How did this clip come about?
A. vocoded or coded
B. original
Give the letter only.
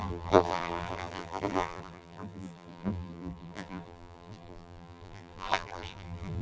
A